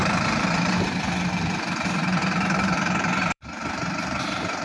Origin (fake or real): fake